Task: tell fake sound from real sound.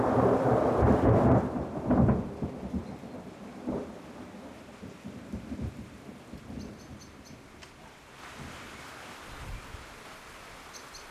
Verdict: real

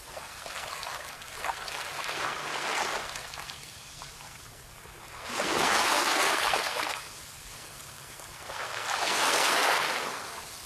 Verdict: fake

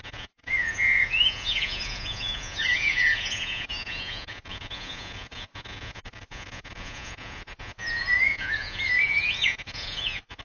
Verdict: fake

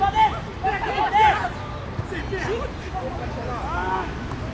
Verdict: real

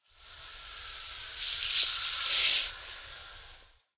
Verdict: real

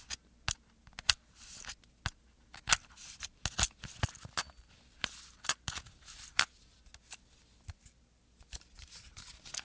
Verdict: real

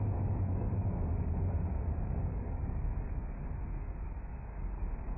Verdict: fake